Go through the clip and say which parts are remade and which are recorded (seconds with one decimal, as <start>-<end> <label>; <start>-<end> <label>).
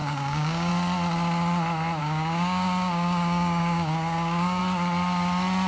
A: 0.0-0.7 remade; 0.7-2.0 recorded; 2.0-4.6 remade; 4.6-5.7 recorded